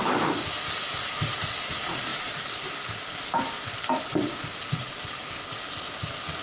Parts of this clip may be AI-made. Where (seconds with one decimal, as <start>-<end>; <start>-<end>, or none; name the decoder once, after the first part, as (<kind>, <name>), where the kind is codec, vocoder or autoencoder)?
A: 2.1-5.5 (vocoder, BigVGAN v2)